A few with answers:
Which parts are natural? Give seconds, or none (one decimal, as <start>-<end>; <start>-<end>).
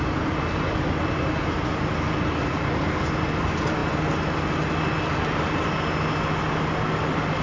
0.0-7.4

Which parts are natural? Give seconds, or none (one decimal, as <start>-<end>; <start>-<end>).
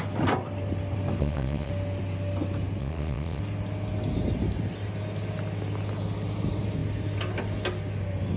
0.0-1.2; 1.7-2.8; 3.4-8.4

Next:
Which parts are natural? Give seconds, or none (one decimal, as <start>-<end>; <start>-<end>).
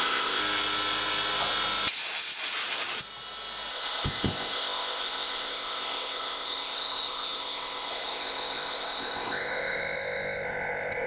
0.4-3.7